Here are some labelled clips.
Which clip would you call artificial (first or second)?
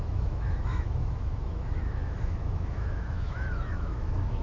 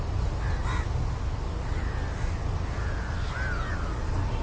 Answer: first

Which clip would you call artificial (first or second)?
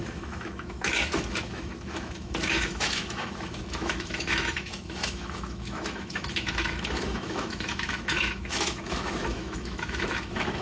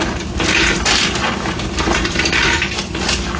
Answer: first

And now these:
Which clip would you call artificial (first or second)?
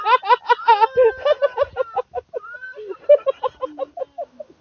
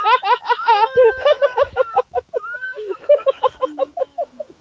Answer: second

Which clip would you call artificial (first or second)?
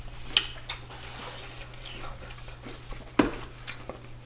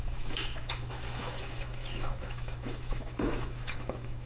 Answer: second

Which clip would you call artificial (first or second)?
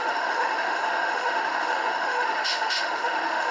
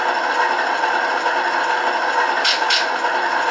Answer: first